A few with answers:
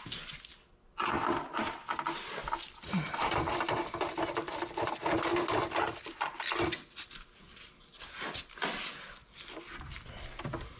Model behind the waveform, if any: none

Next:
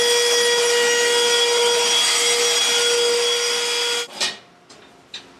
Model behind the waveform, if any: none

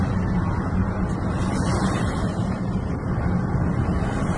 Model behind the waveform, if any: vocoder, BigVGAN v2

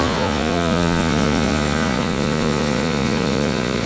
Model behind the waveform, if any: vocoder, Vocos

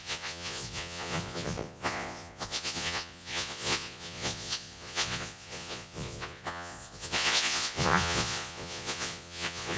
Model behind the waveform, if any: vocoder, Vocos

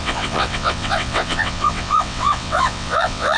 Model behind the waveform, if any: vocoder, WaveNeXt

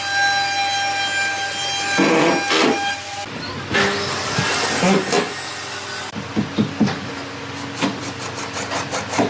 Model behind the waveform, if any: none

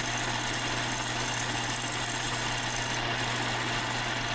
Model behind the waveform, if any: none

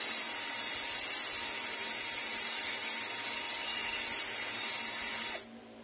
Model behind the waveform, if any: none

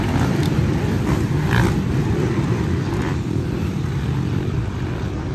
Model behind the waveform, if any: vocoder, BigVGAN v2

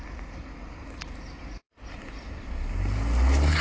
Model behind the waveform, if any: none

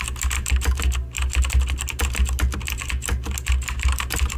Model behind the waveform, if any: none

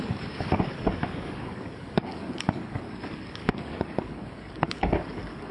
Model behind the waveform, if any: codec, DAC